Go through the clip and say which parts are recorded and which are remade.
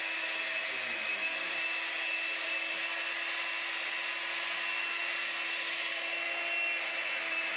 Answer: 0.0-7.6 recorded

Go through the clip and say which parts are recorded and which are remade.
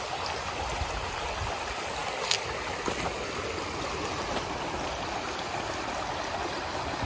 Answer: 0.0-7.1 recorded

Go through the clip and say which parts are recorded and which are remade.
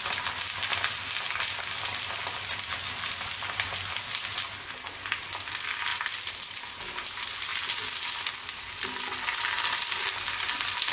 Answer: 0.0-10.9 recorded